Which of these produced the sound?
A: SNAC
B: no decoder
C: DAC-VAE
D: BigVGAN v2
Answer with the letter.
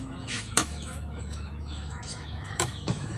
C